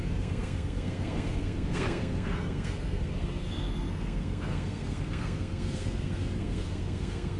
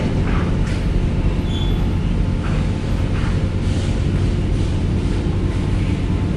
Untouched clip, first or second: second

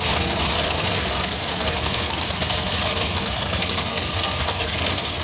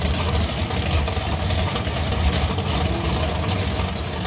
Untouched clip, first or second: second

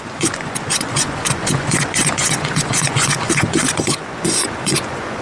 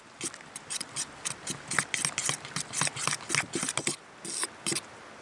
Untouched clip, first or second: second